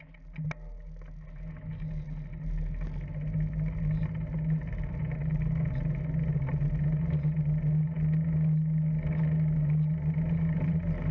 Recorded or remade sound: recorded